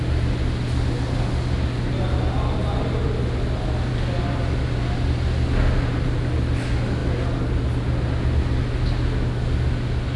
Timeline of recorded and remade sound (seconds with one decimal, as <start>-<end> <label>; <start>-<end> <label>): 0.0-10.2 recorded